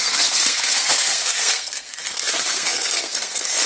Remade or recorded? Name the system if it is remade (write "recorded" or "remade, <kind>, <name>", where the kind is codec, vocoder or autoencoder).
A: remade, codec, SNAC